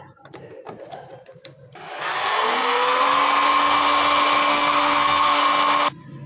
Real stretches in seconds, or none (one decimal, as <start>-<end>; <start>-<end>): 0.0-2.2; 3.0-4.5; 5.4-6.3